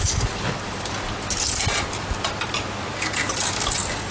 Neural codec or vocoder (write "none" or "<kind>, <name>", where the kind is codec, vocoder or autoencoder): none